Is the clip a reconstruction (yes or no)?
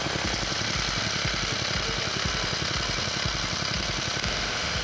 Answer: no